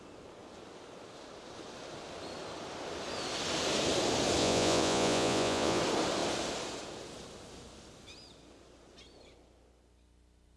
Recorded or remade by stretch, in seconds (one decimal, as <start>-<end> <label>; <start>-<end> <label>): 0.0-4.4 recorded; 4.4-5.8 remade; 5.8-10.6 recorded